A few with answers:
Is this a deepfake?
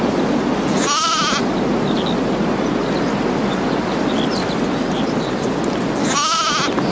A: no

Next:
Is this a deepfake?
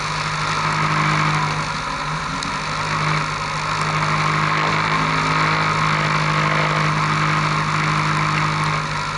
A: no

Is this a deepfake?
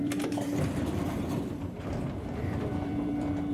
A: yes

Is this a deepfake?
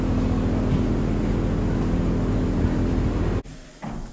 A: no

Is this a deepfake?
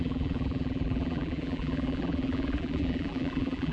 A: yes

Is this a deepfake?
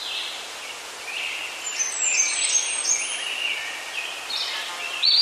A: no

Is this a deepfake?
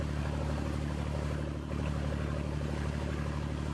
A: no